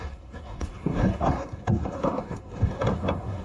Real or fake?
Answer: fake